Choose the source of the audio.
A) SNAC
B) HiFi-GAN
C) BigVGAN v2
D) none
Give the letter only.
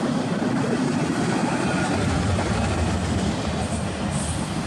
D